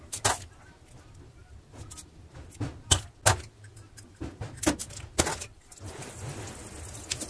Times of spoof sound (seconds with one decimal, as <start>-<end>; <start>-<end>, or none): none